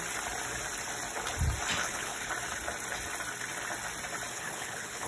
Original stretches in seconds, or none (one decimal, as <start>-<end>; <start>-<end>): 0.0-1.8; 2.3-4.3